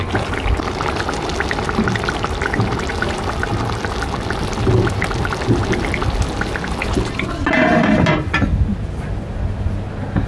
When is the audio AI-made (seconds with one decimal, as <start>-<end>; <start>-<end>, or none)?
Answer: none